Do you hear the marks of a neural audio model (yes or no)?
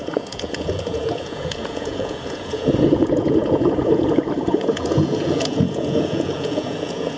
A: yes